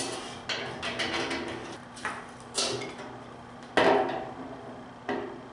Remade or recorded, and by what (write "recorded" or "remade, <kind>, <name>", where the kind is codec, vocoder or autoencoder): recorded